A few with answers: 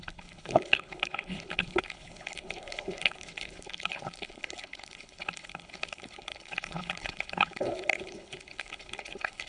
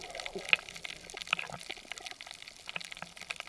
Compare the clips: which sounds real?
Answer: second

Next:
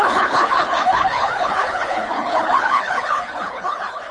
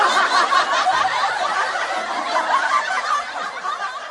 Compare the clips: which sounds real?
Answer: second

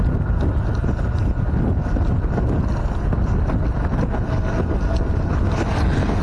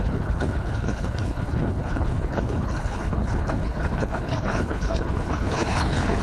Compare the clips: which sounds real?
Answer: first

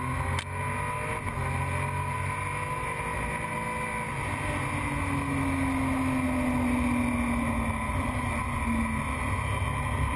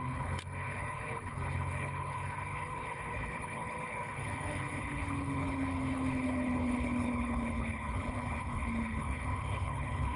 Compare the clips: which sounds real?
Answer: first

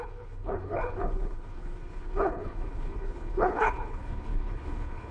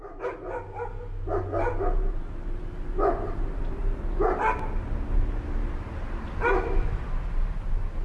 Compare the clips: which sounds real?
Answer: second